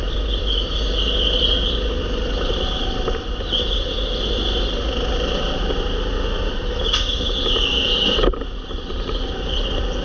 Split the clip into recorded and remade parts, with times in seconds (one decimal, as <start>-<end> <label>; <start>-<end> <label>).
0.0-7.8 recorded; 7.8-8.4 remade; 8.4-10.0 recorded